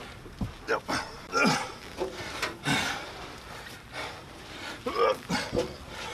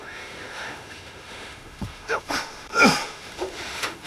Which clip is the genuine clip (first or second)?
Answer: first